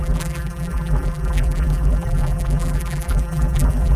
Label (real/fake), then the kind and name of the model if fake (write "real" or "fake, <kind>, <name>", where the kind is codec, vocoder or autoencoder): fake, vocoder, BigVGAN v2